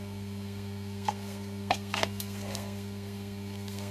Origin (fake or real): fake